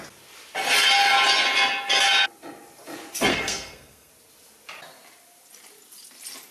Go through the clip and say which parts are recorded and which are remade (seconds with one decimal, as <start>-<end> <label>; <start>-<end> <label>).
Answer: 0.0-3.3 recorded; 3.3-4.1 remade; 4.1-6.5 recorded